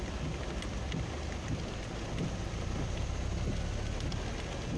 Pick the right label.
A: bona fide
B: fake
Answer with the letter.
A